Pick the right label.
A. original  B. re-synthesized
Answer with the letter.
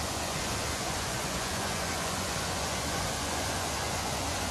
B